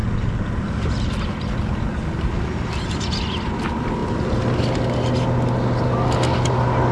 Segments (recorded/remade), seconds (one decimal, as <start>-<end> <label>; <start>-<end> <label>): 0.0-6.9 recorded